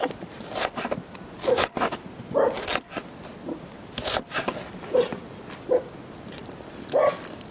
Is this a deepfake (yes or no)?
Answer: no